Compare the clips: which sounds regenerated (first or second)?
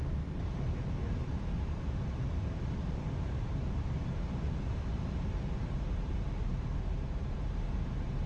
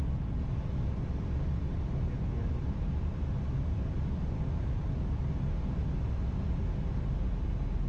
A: first